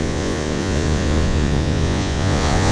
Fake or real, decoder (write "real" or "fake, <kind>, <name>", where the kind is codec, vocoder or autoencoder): fake, vocoder, Vocos